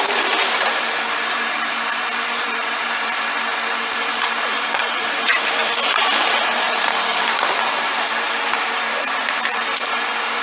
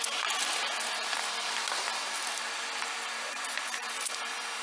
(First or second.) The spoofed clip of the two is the first